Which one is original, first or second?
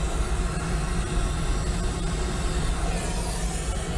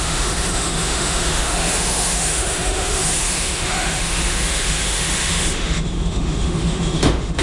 first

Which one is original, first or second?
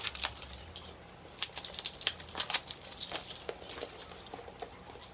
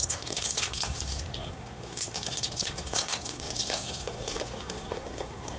first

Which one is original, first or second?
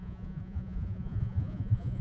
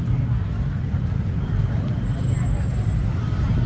second